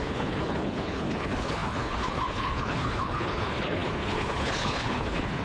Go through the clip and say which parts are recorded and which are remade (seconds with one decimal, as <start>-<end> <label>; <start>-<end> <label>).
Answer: 0.0-5.4 remade